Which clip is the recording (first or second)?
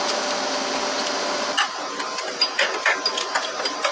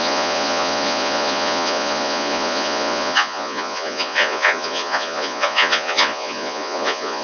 first